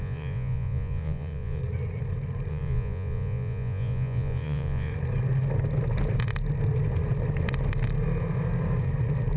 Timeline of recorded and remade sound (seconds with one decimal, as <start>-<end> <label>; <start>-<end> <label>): 0.0-1.6 remade; 1.6-2.5 recorded; 2.5-4.9 remade; 4.9-9.4 recorded